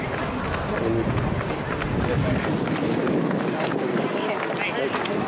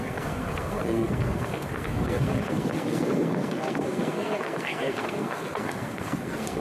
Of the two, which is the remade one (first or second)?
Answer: second